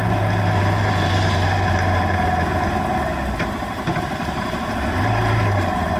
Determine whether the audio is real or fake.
fake